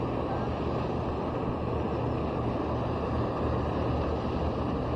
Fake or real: real